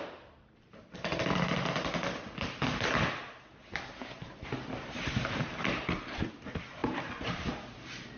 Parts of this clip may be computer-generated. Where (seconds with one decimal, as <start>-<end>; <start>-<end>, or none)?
none